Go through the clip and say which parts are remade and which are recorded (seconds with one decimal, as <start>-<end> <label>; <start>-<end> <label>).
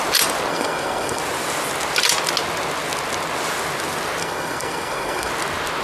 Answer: 0.0-0.5 recorded; 0.5-1.2 remade; 1.2-4.2 recorded; 4.2-5.3 remade; 5.3-5.8 recorded